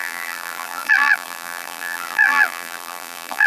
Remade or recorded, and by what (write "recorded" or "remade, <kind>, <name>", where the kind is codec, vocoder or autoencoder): remade, vocoder, BigVGAN v2